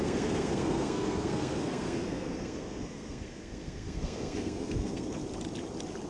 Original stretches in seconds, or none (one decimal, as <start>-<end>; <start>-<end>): 5.2-6.1